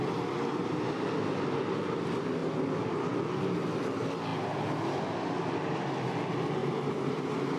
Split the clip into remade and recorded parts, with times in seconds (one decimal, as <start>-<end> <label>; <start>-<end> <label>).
0.0-7.6 recorded